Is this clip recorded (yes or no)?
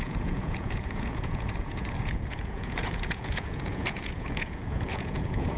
no